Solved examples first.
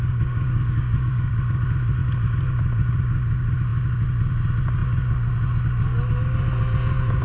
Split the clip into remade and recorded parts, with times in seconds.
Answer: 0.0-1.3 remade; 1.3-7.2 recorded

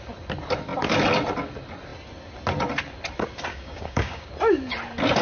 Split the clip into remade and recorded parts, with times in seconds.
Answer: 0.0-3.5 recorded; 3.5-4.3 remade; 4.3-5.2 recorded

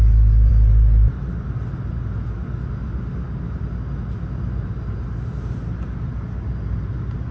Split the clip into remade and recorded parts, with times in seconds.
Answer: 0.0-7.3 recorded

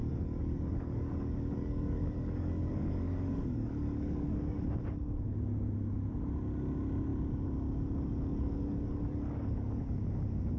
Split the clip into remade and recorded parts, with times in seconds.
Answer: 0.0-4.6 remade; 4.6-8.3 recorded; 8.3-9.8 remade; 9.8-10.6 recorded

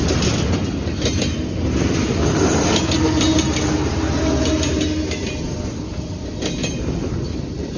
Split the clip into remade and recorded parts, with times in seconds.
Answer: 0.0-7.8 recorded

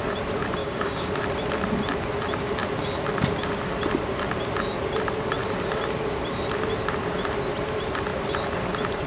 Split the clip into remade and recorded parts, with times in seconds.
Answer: 0.0-0.6 recorded; 0.6-1.1 remade; 1.1-9.1 recorded

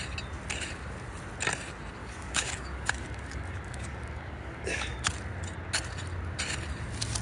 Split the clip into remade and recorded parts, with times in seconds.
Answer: 0.0-2.0 recorded; 2.0-5.1 remade; 5.1-7.2 recorded